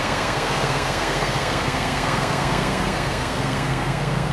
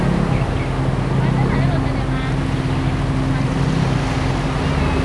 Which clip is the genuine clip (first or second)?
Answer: second